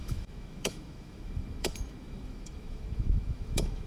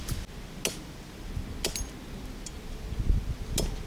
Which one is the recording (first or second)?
second